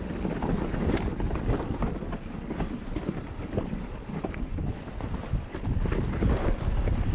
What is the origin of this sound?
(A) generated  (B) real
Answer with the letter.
B